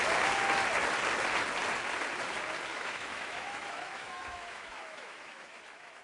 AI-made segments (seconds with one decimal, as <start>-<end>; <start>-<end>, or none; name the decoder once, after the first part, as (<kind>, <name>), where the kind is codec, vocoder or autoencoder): 2.7-6.0 (autoencoder, DAC-VAE)